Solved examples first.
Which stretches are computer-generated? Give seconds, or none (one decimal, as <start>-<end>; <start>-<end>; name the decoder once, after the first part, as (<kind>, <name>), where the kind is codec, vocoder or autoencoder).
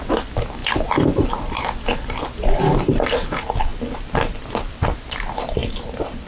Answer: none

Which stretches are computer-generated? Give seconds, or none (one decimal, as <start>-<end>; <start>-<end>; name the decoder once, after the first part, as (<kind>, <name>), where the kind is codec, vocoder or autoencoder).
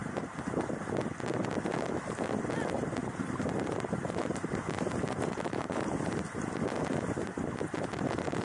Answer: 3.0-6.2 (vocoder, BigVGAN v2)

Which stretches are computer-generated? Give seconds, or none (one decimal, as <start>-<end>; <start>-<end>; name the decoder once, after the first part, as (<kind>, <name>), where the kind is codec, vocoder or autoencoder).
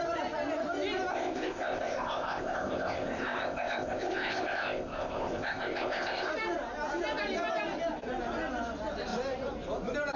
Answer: 1.1-6.3 (codec, ZipCodec)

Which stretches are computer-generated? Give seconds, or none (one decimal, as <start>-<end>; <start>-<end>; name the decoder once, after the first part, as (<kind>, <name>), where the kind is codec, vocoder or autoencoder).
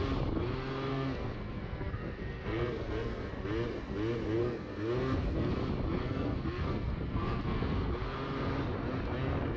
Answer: 0.9-3.3 (codec, SNAC); 4.4-5.5; 6.0-7.9